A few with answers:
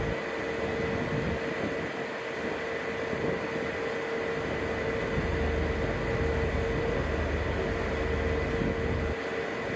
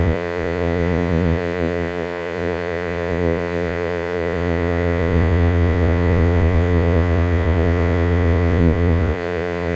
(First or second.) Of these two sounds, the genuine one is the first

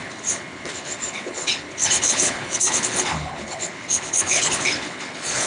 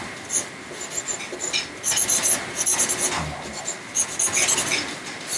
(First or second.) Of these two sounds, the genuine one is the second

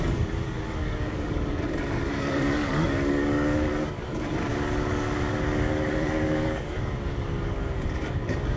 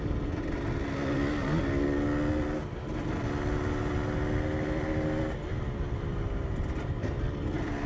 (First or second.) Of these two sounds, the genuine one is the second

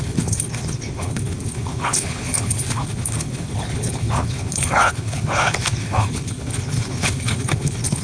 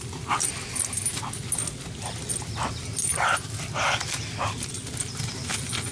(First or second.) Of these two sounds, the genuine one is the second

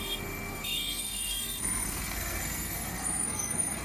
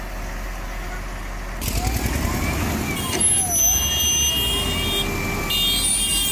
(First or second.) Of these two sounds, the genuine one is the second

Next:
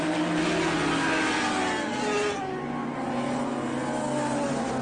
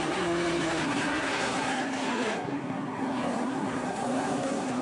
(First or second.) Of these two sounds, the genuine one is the first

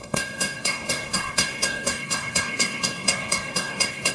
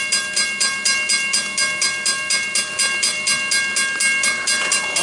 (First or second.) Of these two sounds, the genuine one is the second